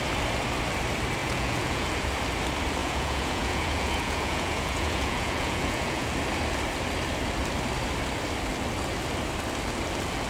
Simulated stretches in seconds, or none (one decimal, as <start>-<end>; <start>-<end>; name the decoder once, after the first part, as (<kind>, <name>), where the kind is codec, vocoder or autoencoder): 1.2-1.9 (vocoder, Vocos); 2.8-6.1